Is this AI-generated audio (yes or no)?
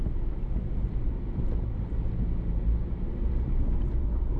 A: no